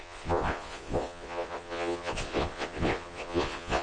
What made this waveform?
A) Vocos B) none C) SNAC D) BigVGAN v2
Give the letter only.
A